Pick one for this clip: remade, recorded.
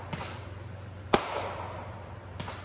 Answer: recorded